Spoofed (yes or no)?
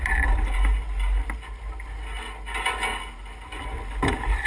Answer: no